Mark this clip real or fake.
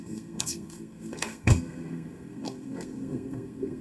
fake